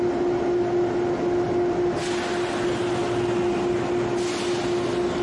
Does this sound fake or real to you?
real